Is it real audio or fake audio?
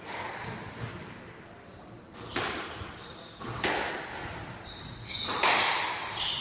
real